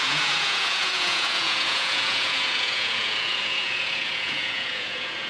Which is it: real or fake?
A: fake